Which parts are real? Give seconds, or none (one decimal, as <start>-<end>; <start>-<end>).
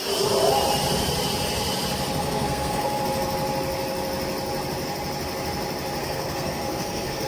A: 0.0-2.2; 3.0-6.0